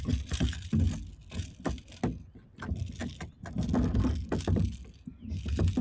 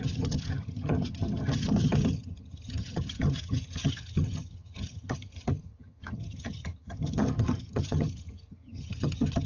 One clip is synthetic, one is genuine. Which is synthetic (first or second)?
second